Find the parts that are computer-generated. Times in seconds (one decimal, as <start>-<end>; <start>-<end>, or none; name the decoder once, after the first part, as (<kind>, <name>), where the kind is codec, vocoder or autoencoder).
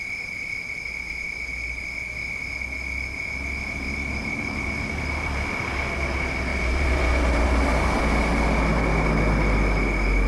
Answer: 4.2-5.5 (vocoder, BigVGAN v2); 6.5-8.0